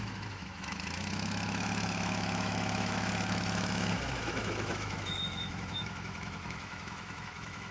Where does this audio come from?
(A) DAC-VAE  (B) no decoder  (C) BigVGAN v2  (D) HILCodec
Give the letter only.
A